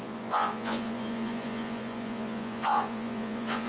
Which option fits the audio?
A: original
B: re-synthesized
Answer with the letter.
B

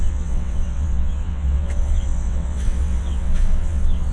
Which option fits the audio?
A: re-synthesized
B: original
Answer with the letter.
A